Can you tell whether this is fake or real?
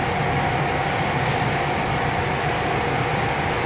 real